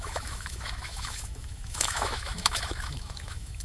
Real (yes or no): no